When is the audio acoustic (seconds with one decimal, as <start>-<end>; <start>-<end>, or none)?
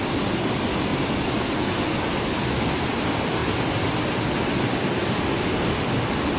0.0-6.4